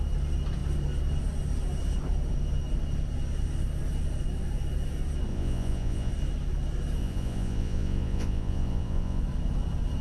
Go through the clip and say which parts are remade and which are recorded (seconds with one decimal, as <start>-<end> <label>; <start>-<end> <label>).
0.0-5.3 recorded; 5.3-6.1 remade; 6.1-7.0 recorded; 7.0-9.2 remade; 9.2-10.0 recorded